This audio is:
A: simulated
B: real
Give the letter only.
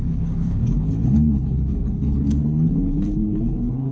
A